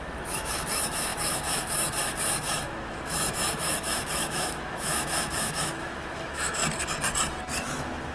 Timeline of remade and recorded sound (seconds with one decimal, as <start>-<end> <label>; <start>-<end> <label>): 0.0-6.6 remade; 6.6-7.6 recorded; 7.6-8.1 remade